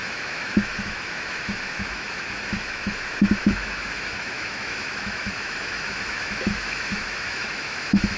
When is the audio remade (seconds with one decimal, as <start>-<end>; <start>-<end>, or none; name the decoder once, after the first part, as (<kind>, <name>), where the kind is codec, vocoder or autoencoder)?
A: 0.0-8.2 (autoencoder, DAC-VAE)